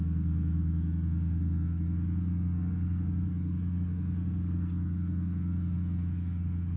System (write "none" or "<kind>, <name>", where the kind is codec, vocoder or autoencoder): codec, SNAC